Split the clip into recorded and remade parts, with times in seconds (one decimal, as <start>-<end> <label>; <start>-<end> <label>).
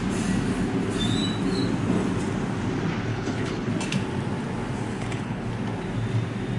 0.0-3.1 recorded; 3.1-3.7 remade; 3.7-4.9 recorded; 4.9-5.5 remade; 5.5-6.6 recorded